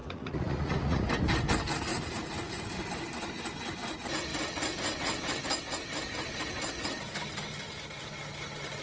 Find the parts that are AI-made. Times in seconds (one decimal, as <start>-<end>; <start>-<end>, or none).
0.0-1.1